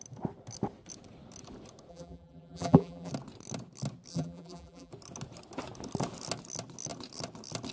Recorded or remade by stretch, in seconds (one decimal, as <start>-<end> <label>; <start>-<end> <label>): 0.0-1.9 recorded; 1.9-3.1 remade; 3.1-4.1 recorded; 4.1-4.9 remade; 4.9-7.7 recorded